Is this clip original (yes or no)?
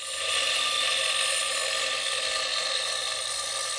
yes